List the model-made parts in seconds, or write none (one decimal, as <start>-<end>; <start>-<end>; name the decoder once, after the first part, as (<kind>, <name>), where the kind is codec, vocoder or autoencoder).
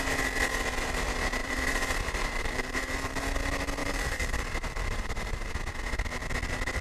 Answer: 1.4-3.2 (vocoder, BigVGAN v2); 3.8-5.5